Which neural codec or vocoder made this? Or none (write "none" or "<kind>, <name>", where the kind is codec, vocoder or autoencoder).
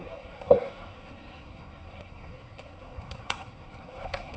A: codec, SNAC